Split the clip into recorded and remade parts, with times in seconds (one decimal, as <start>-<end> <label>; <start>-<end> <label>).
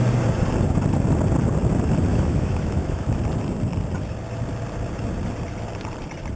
0.0-2.1 recorded; 2.1-3.2 remade; 3.2-6.4 recorded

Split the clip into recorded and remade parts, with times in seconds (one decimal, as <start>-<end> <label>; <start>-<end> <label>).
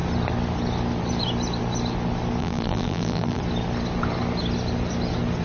0.0-2.4 recorded; 2.4-3.4 remade; 3.4-5.4 recorded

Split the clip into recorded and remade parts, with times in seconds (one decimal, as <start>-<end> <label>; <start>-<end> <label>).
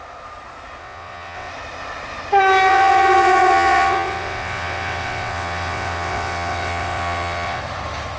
0.0-0.8 recorded; 0.8-1.5 remade; 1.5-2.7 recorded; 2.7-7.6 remade; 7.6-8.2 recorded